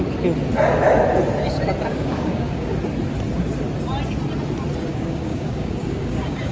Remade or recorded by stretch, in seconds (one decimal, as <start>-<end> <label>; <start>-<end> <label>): 0.0-1.9 recorded; 1.9-2.7 remade; 2.7-4.9 recorded; 4.9-6.5 remade

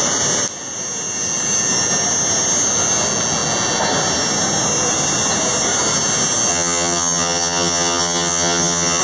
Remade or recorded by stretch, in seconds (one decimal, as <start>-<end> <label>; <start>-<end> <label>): 0.0-6.5 recorded; 6.5-9.0 remade

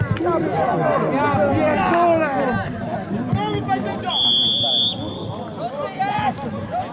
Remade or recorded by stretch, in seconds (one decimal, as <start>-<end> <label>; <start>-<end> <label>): 0.0-6.9 recorded

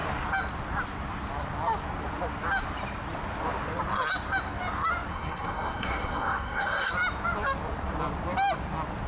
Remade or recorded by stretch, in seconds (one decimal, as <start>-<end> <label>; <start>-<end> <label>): 0.0-5.1 recorded; 5.1-6.9 remade; 6.9-9.1 recorded

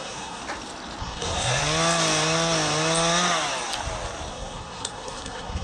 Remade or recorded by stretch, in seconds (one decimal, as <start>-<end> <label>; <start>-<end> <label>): 0.0-0.4 remade; 0.4-1.0 recorded; 1.0-1.6 remade; 1.6-4.3 recorded; 4.3-5.6 remade